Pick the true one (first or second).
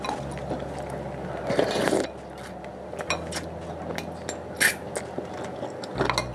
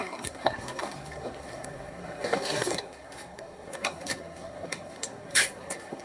first